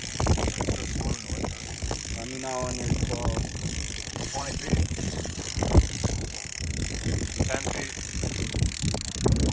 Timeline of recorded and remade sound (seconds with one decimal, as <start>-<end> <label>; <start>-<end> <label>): 0.0-4.1 recorded; 4.1-5.4 remade; 5.4-9.5 recorded